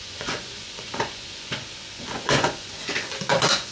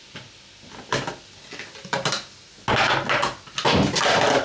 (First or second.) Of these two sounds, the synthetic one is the first